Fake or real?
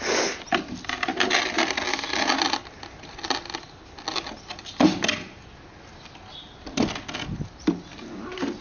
real